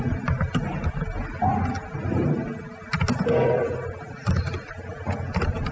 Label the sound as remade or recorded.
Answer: recorded